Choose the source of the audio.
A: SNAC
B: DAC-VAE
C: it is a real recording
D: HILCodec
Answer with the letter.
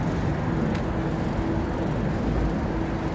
C